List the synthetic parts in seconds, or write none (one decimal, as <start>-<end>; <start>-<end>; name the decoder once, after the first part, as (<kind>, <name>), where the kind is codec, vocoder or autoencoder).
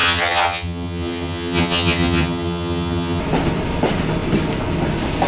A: 0.0-3.2 (vocoder, HiFi-GAN)